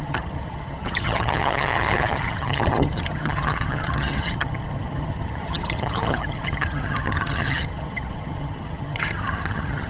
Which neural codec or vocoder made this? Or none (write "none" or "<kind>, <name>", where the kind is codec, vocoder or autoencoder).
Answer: vocoder, HiFi-GAN